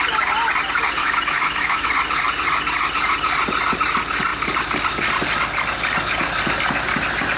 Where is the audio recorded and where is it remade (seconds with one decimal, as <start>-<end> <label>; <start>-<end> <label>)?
0.0-1.0 recorded; 1.0-1.9 remade; 1.9-7.4 recorded